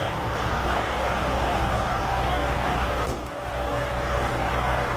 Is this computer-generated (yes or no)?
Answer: yes